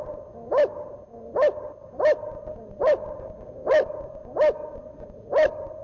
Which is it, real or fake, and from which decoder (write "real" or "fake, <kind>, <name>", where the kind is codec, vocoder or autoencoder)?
real